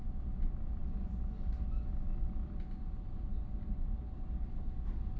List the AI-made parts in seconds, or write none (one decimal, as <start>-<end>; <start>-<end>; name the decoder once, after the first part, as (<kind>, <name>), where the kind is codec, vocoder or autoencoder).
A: none